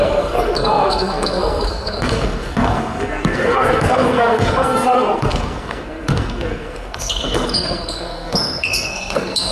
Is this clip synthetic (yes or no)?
yes